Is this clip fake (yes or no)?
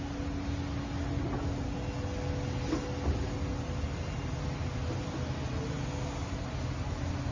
no